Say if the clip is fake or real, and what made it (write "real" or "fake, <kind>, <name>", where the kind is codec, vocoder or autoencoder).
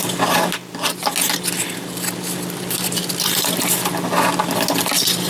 real